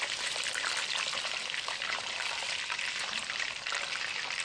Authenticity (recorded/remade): remade